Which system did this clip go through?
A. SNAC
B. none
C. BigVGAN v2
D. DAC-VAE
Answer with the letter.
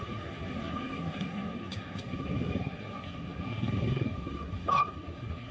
A